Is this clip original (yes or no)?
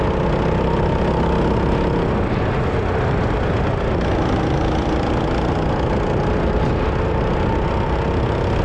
yes